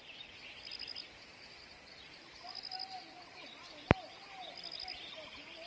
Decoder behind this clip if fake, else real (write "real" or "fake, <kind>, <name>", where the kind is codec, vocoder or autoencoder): real